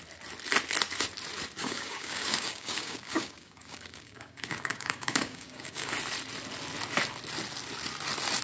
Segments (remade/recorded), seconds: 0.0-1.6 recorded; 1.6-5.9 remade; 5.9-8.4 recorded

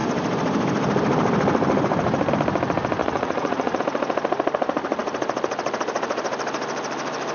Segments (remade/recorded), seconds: 0.0-3.0 recorded; 3.0-3.8 remade; 3.8-7.3 recorded